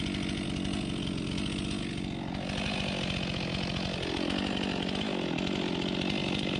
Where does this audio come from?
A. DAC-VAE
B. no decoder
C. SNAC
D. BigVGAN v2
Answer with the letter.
B